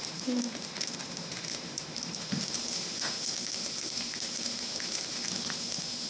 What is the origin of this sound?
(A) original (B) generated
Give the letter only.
B